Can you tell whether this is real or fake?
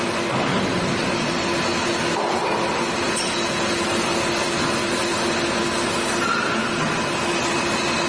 real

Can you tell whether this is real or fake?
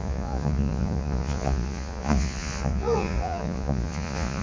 fake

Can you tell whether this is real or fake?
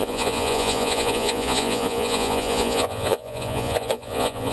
fake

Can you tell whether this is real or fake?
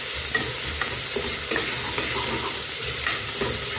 real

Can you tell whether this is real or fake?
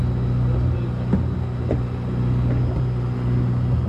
real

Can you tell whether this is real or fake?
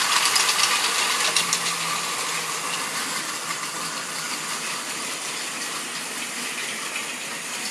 real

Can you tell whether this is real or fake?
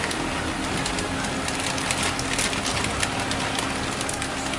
real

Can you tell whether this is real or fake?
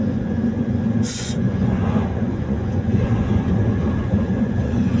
fake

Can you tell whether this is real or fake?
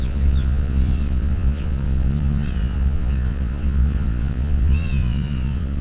fake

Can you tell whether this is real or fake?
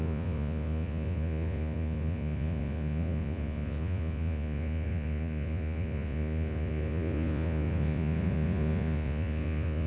fake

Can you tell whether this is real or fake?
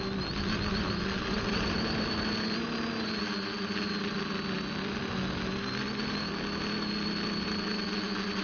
real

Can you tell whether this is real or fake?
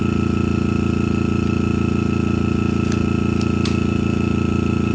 real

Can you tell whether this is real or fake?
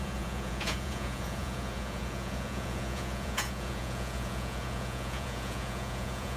fake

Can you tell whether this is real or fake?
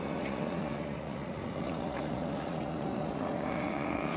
fake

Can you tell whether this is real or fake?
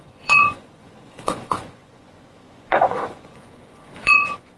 fake